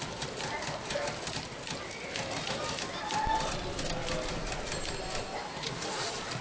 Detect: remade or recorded recorded